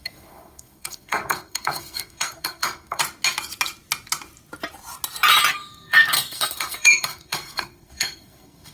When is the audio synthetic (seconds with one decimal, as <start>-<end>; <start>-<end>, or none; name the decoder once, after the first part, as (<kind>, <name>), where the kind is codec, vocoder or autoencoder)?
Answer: 0.0-3.0 (codec, SNAC); 5.5-8.7